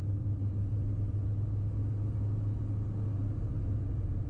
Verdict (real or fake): real